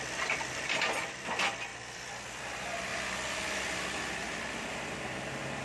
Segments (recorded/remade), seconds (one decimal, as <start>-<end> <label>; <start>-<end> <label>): 0.0-1.7 recorded; 1.7-2.4 remade; 2.4-2.9 recorded; 2.9-3.6 remade; 3.6-5.6 recorded